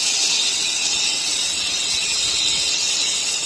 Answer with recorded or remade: remade